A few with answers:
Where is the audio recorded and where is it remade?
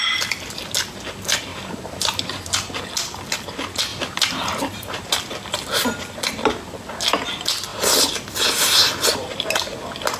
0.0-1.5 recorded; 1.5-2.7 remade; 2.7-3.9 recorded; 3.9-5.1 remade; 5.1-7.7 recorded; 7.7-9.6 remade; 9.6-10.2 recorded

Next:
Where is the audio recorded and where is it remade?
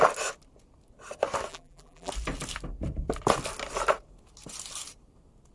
0.0-1.5 recorded; 1.5-2.1 remade; 2.1-5.5 recorded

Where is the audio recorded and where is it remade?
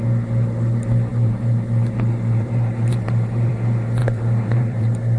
0.0-1.1 recorded; 1.1-3.5 remade; 3.5-4.0 recorded; 4.0-5.2 remade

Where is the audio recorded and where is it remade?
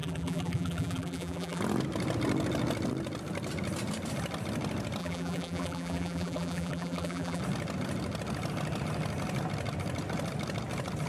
0.0-1.6 remade; 1.6-5.0 recorded; 5.0-7.4 remade; 7.4-11.1 recorded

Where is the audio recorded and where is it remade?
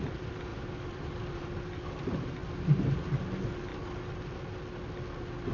0.0-0.5 recorded; 0.5-1.6 remade; 1.6-3.7 recorded; 3.7-4.3 remade; 4.3-5.5 recorded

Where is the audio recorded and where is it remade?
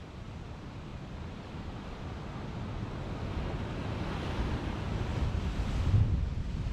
0.0-0.9 recorded; 0.9-2.0 remade; 2.0-5.1 recorded; 5.1-6.0 remade; 6.0-6.7 recorded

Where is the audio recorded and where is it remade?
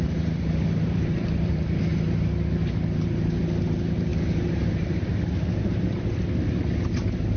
0.0-1.9 remade; 1.9-2.7 recorded; 2.7-4.1 remade; 4.1-7.4 recorded